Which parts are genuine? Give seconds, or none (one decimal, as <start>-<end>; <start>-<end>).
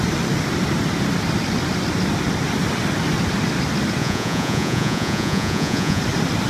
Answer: 0.0-4.0; 6.0-6.5